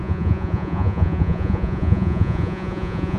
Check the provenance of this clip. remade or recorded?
remade